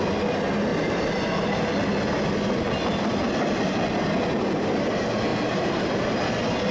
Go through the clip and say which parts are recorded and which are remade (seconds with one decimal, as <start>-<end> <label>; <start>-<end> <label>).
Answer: 0.0-5.3 recorded; 5.3-5.8 remade; 5.8-6.7 recorded